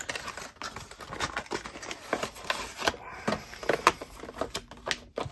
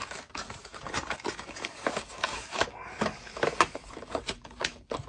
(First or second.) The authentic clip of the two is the first